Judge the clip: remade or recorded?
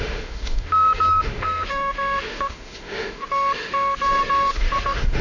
remade